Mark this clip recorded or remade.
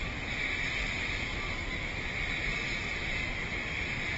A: recorded